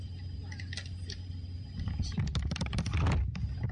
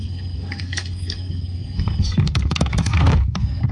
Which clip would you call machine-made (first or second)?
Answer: second